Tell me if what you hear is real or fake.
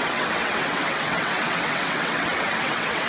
fake